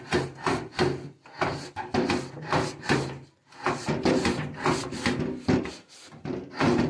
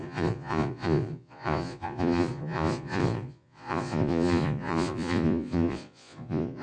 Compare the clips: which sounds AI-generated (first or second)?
second